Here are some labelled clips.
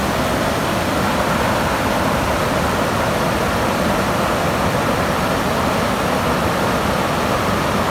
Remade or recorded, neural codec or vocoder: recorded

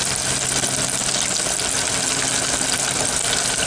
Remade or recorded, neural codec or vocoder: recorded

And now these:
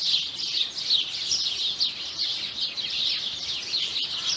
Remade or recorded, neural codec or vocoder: recorded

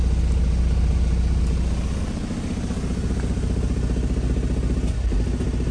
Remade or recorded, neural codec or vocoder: recorded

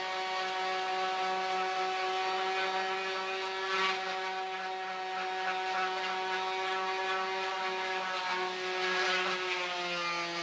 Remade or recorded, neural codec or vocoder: recorded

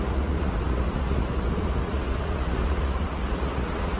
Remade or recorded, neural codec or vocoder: remade, vocoder, Vocos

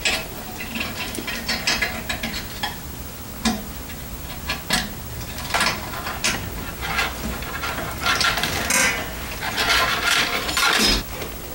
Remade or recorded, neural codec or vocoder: recorded